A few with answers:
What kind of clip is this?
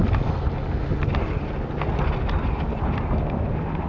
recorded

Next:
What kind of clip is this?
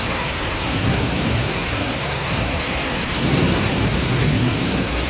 remade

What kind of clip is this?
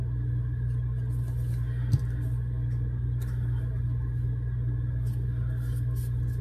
recorded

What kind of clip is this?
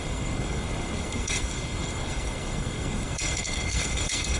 remade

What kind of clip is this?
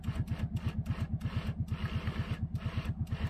recorded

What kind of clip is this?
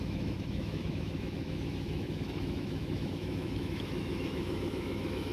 remade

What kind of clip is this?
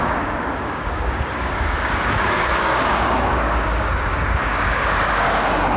remade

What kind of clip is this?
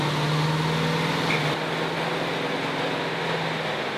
recorded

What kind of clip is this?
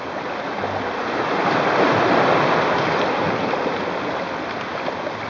recorded